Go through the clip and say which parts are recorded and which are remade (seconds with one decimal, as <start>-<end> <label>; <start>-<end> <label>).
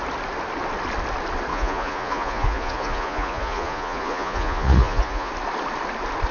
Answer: 0.0-1.5 recorded; 1.5-5.3 remade; 5.3-6.3 recorded